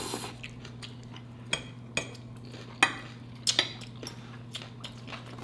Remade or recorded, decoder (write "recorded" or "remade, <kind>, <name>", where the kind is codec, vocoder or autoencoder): recorded